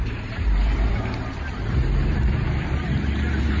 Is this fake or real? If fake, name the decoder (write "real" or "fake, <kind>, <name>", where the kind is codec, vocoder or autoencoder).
fake, vocoder, BigVGAN v2